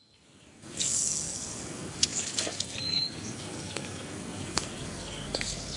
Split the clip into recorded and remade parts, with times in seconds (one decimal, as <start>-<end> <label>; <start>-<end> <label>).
0.0-5.8 remade